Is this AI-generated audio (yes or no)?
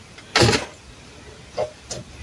no